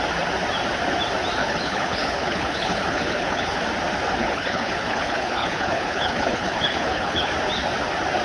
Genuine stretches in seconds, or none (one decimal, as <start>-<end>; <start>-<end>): 0.0-1.4; 3.6-4.2; 7.3-8.2